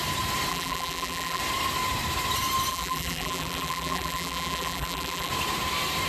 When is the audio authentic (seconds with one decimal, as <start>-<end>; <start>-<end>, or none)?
0.0-0.5; 1.4-2.7; 5.3-6.1

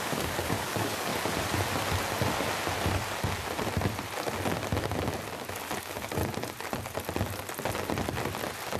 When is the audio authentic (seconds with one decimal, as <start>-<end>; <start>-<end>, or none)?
1.1-5.8; 6.2-8.8

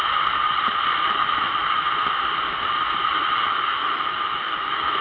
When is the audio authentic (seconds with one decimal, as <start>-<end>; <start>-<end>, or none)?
0.0-0.9; 1.8-3.2

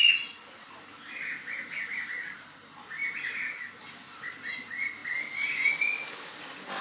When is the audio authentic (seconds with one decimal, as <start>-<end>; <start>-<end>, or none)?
0.0-6.8

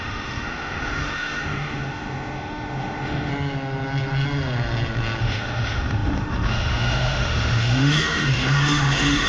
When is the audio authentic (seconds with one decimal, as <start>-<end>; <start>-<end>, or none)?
3.3-5.2

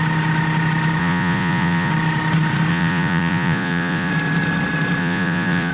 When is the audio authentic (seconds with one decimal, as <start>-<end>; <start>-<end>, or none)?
0.0-1.0; 1.9-2.7; 4.1-5.0